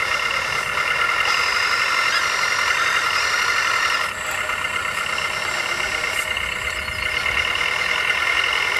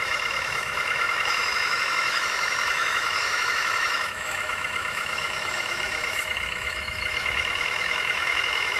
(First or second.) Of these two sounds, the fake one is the second